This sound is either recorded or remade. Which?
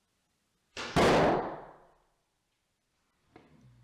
recorded